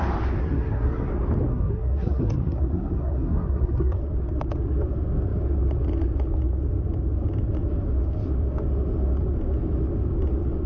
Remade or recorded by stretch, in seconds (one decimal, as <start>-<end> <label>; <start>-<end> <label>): 0.0-0.4 recorded; 0.4-1.1 remade; 1.1-1.5 recorded; 1.5-4.0 remade; 4.0-10.7 recorded